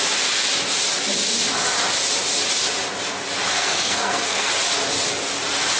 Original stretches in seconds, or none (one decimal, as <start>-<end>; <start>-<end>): 0.0-3.6; 4.5-5.8